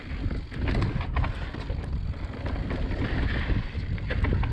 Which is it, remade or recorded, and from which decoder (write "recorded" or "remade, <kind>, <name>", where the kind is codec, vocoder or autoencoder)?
recorded